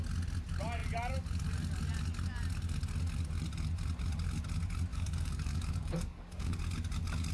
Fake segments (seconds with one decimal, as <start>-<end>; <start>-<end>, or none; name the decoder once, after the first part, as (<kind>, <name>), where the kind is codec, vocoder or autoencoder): 4.9-6.6 (codec, DAC)